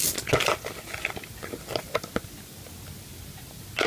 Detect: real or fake real